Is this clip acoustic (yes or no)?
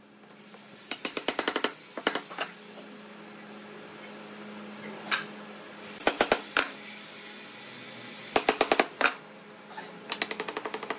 yes